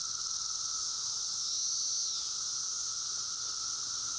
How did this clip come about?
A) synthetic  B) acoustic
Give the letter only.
B